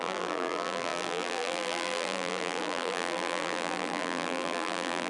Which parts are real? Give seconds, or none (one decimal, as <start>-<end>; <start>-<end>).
none